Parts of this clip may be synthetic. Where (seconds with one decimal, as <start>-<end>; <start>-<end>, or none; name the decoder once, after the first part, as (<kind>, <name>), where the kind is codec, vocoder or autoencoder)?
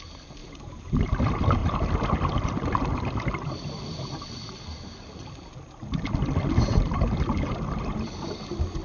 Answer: 0.4-1.0 (vocoder, BigVGAN v2)